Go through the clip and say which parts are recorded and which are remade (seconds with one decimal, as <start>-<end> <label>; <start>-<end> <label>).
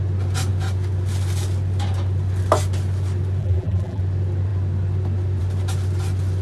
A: 0.0-3.4 recorded; 3.4-4.0 remade; 4.0-6.4 recorded